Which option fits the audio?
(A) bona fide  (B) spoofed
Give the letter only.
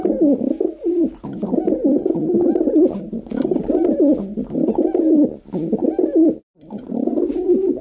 A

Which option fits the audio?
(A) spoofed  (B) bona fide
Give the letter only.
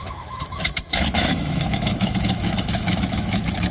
A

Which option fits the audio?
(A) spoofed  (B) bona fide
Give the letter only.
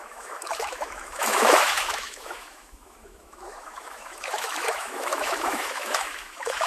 A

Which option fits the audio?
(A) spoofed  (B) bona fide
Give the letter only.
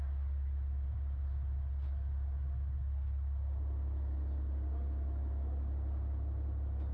B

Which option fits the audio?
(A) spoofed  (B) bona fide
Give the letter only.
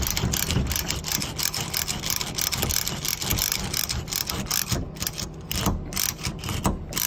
B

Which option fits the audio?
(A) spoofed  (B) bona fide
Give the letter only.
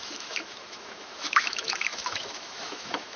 A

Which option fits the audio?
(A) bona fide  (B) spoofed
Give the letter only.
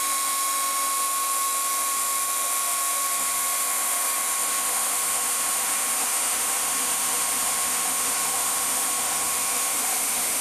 B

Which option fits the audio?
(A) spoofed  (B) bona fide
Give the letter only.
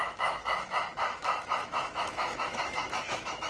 A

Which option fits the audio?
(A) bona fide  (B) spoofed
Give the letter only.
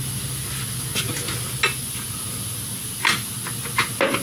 A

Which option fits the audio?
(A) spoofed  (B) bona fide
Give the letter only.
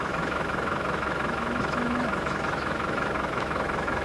A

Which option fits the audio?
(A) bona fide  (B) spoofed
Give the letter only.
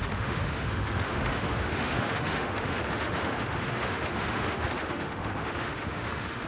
B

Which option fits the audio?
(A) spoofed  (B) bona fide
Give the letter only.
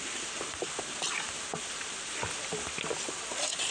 B